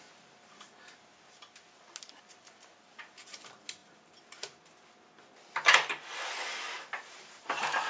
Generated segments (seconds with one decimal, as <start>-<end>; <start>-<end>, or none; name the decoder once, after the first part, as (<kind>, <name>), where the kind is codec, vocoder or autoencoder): none